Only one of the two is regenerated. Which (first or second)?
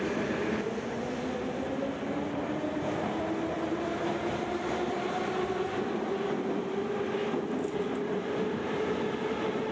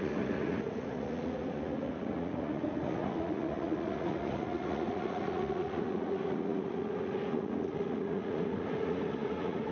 second